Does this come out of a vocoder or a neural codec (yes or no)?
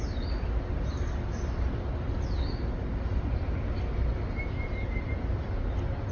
no